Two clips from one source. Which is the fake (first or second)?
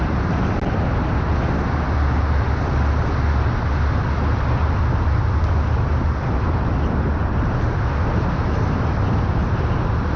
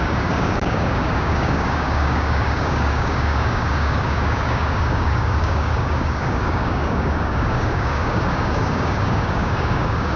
second